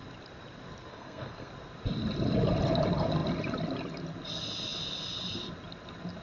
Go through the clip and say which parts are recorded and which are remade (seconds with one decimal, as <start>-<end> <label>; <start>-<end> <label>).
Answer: 0.0-0.9 recorded; 0.9-1.5 remade; 1.5-6.2 recorded